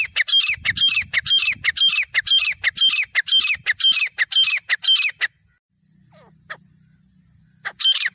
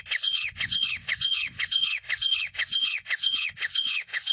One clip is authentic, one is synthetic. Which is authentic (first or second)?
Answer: first